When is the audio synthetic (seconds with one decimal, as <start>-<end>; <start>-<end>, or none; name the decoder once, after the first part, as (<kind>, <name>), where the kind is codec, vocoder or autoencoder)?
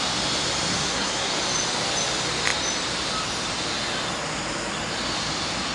0.7-1.3 (codec, SNAC)